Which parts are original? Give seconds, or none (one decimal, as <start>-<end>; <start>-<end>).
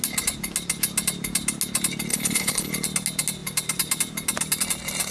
0.0-2.1; 2.7-5.1